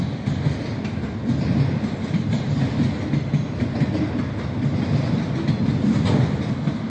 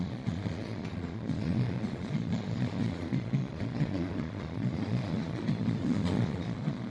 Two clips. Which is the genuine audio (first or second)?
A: first